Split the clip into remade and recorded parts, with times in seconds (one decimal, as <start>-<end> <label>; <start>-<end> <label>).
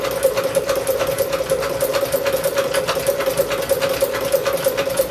0.0-5.1 recorded